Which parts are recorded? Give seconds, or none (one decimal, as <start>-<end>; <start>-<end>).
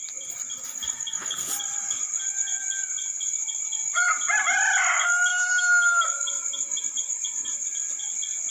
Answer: 0.0-5.3; 6.0-8.5